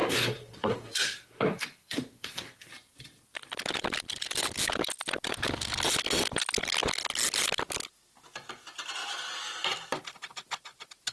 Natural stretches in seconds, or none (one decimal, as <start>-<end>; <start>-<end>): 2.7-11.1